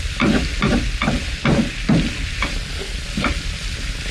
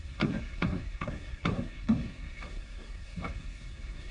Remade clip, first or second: second